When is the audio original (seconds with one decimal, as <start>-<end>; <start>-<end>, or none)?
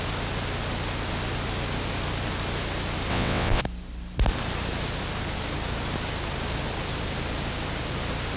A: 0.0-3.1; 3.6-8.4